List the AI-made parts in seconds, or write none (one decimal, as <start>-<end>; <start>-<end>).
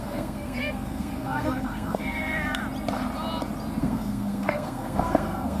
0.0-2.6; 3.8-5.6